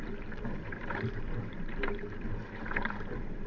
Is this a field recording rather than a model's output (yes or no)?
no